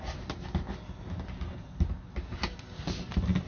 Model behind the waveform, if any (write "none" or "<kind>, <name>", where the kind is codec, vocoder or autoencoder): none